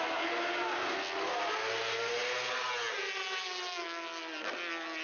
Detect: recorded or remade recorded